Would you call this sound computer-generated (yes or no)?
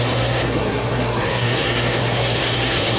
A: yes